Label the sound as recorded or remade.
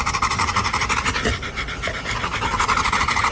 recorded